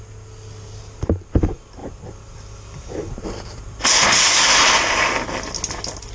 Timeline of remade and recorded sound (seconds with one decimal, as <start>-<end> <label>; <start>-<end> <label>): 0.0-1.8 recorded; 1.8-4.7 remade; 4.7-6.1 recorded